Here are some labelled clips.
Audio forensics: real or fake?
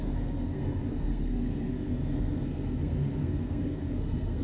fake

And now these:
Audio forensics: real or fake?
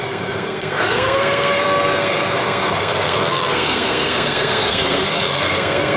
fake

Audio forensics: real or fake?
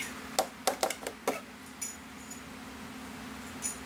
real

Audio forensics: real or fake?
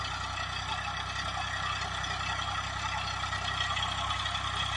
real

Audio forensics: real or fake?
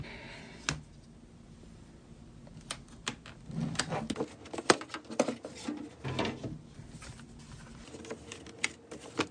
real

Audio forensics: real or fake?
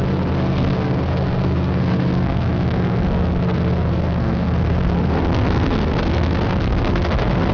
fake